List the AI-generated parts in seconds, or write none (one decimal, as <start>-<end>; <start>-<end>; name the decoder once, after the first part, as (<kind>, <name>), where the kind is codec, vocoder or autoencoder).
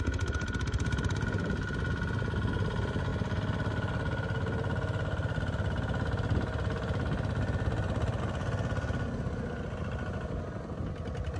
none